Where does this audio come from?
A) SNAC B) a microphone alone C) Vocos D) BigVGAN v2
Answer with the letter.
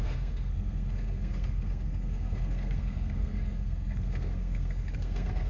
A